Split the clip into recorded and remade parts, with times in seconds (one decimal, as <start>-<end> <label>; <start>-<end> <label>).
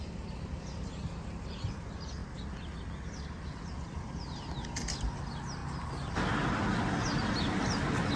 0.0-8.2 recorded